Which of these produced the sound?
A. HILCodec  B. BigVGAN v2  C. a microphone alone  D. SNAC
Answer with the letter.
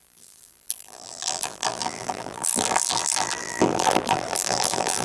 B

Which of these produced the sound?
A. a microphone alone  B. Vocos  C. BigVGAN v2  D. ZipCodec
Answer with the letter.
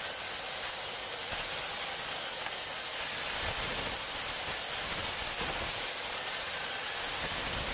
A